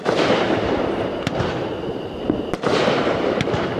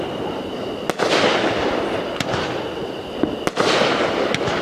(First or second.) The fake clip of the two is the first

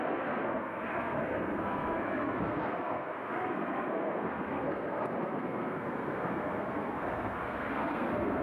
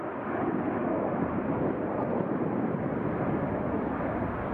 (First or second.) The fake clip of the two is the first